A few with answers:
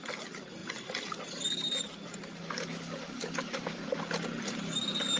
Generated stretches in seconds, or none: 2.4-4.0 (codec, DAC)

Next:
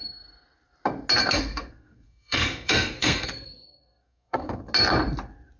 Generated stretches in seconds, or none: 1.2-4.6 (codec, SNAC)

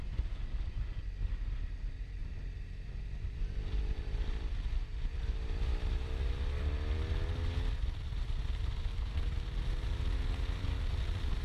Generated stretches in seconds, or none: 2.2-4.2 (vocoder, BigVGAN v2)

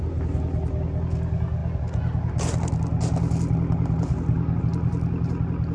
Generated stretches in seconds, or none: none

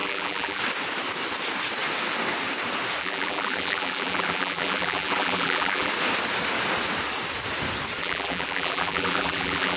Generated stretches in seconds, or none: 0.0-0.6 (vocoder, BigVGAN v2); 3.0-5.9; 8.0-9.8

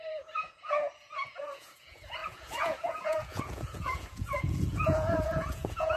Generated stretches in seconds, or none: 0.0-6.0 (vocoder, Vocos)

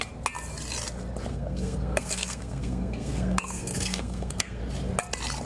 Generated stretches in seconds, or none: 1.3-4.6 (codec, SNAC)